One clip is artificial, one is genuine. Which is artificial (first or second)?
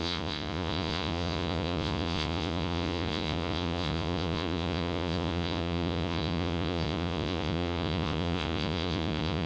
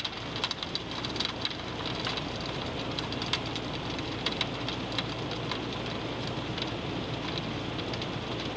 first